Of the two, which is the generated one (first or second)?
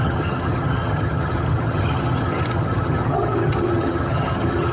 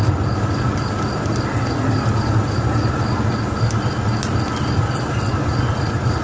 first